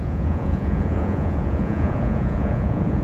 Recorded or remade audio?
remade